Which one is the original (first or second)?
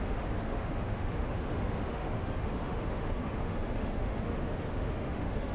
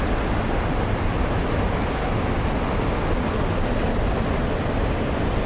second